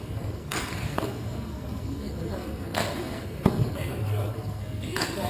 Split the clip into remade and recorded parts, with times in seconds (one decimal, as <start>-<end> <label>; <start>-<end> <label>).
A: 0.0-5.3 remade